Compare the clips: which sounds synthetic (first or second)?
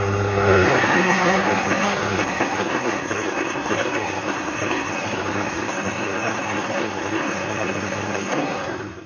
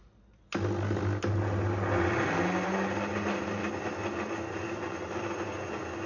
first